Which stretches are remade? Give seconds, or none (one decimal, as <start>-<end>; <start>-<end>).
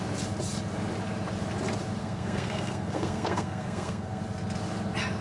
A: 2.0-4.2